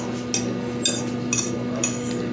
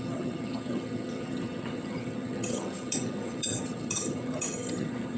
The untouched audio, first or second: first